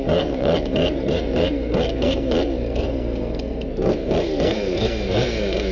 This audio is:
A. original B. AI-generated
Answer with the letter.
B